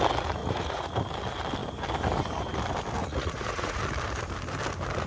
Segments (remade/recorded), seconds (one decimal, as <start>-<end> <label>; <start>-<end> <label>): 0.0-0.4 recorded; 0.4-1.0 remade; 1.0-3.0 recorded; 3.0-3.8 remade; 3.8-5.1 recorded